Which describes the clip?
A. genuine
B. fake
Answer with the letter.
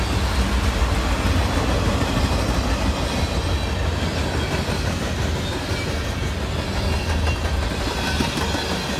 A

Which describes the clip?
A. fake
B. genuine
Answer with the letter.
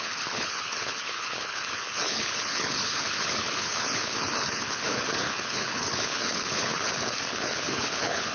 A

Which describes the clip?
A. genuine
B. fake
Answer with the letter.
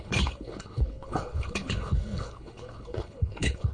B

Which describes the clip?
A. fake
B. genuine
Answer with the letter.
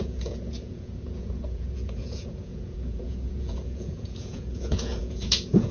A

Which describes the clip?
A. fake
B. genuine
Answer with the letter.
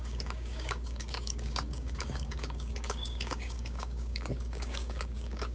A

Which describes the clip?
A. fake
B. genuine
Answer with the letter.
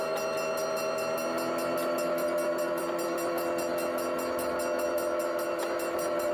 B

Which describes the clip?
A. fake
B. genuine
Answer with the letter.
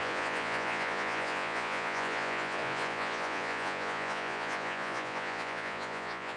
A